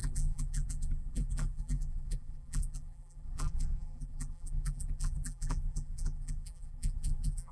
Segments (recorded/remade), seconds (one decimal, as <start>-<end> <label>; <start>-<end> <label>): 0.0-7.5 remade